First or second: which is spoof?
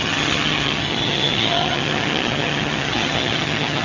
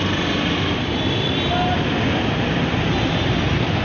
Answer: first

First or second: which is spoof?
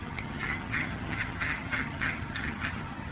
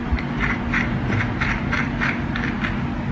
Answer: first